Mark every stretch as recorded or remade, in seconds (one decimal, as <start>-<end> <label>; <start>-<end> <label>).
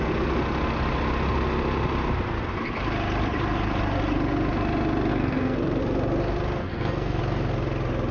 0.0-5.1 recorded; 5.1-5.8 remade; 5.8-6.6 recorded; 6.6-7.2 remade; 7.2-8.1 recorded